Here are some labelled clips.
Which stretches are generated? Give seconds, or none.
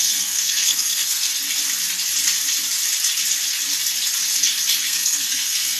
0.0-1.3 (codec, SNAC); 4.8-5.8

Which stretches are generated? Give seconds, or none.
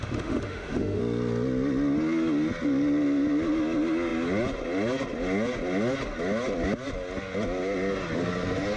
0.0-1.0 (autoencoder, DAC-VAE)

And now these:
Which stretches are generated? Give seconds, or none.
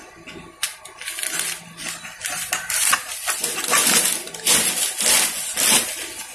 0.7-3.3 (vocoder, BigVGAN v2)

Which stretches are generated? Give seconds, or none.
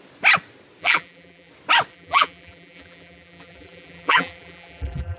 0.8-1.5 (vocoder, BigVGAN v2); 1.9-5.2